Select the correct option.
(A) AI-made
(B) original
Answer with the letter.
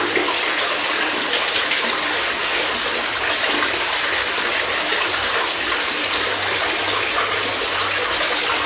B